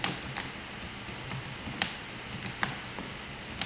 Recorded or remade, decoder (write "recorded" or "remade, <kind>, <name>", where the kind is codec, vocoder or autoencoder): recorded